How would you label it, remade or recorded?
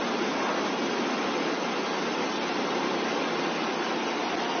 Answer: recorded